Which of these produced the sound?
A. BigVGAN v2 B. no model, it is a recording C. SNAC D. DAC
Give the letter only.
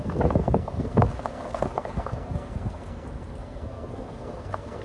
C